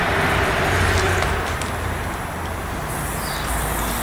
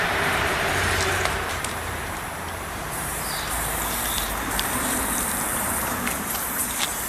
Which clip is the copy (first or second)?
second